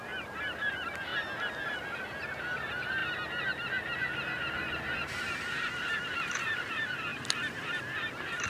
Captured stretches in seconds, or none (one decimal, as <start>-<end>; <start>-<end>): 0.0-8.5